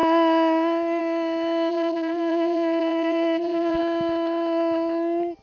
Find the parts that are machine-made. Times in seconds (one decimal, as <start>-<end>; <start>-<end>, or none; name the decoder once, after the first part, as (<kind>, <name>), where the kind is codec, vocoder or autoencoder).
1.7-3.8 (vocoder, BigVGAN v2)